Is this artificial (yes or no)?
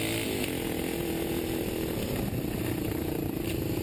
no